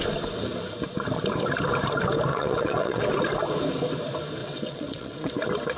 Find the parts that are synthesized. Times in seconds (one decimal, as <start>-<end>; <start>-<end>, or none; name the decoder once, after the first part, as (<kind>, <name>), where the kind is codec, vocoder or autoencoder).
2.3-3.0 (vocoder, WaveNeXt); 4.4-5.3